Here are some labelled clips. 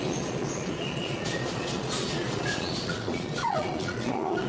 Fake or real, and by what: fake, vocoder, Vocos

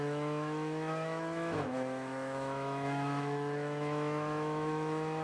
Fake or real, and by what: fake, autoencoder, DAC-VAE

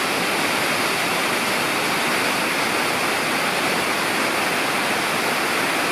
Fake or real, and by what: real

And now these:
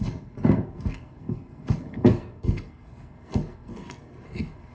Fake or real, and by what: fake, codec, SNAC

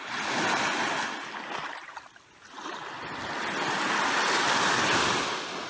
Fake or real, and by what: real